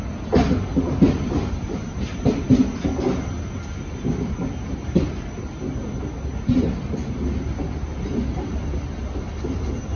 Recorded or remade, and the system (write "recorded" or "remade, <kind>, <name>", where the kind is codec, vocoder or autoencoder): recorded